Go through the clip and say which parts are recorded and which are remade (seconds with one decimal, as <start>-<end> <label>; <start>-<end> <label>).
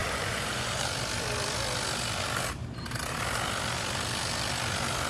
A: 0.0-0.8 remade; 0.8-5.1 recorded